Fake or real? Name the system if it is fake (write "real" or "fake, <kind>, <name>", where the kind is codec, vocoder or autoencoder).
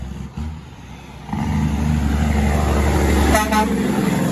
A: real